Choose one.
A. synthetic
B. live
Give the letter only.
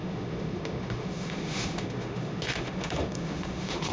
A